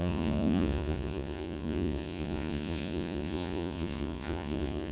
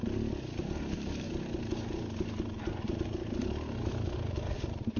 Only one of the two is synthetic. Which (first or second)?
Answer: first